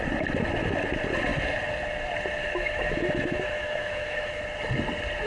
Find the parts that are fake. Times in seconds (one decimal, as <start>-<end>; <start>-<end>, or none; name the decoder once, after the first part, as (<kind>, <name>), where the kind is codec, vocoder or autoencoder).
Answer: 2.4-4.4 (autoencoder, DAC-VAE)